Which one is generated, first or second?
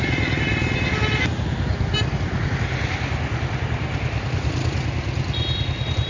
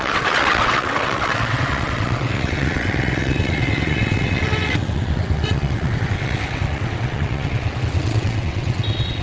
second